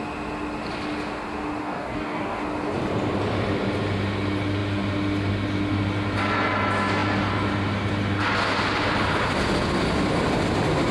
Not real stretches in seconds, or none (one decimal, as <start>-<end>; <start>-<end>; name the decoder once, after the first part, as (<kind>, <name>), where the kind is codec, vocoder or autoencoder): 1.6-2.4 (codec, DAC)

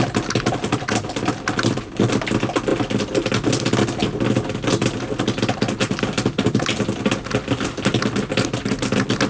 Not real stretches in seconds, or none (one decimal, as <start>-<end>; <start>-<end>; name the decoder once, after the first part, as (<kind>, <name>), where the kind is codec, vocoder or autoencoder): none

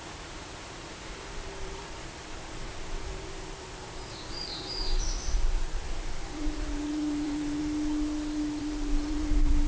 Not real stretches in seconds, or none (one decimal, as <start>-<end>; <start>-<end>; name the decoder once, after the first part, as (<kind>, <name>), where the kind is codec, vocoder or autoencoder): 0.0-7.6 (vocoder, BigVGAN v2); 8.6-9.7

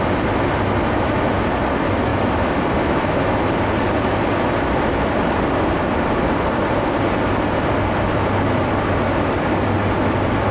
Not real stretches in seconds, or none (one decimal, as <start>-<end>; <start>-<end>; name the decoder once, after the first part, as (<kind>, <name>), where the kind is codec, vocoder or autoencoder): none

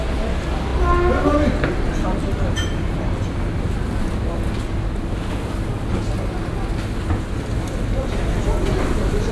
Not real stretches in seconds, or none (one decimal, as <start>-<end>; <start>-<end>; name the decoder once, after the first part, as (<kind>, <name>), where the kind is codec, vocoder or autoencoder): 2.1-3.1 (vocoder, BigVGAN v2)

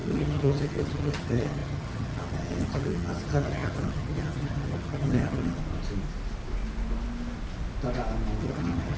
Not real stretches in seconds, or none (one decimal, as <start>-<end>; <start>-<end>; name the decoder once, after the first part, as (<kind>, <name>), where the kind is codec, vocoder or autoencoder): 0.0-5.6 (vocoder, HiFi-GAN); 8.4-9.0

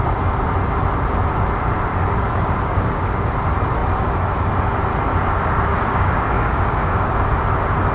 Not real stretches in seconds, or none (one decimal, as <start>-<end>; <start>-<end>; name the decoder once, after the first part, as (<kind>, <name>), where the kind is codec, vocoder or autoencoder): 1.9-3.3 (codec, DAC); 5.7-7.2

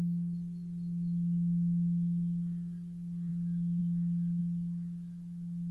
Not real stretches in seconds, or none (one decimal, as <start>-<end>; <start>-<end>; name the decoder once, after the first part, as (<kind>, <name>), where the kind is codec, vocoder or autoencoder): none